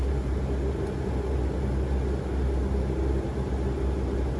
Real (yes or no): yes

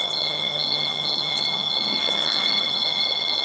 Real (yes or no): no